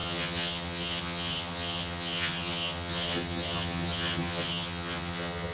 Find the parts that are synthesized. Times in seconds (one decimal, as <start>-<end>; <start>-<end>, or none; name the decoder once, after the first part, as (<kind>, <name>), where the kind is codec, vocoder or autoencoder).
0.0-5.5 (vocoder, HiFi-GAN)